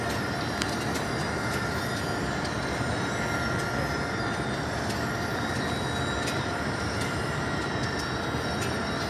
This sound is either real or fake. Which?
real